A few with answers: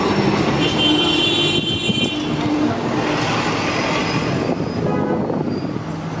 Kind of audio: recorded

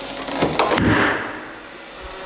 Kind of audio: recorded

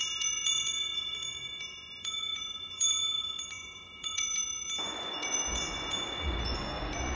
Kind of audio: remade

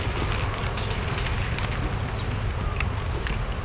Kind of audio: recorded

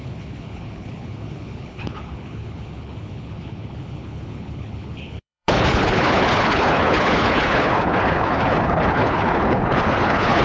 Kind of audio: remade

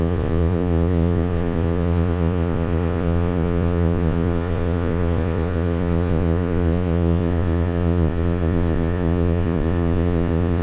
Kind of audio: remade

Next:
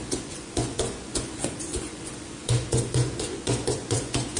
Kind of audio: remade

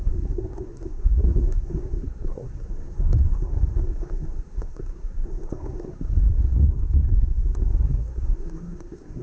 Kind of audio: remade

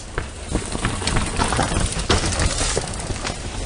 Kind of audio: recorded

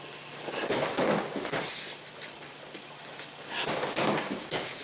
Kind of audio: recorded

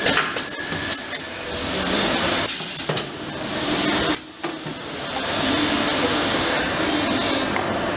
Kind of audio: recorded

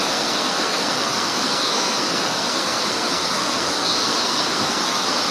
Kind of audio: remade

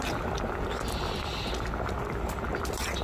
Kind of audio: recorded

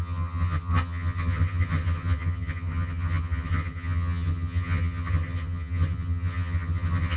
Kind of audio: remade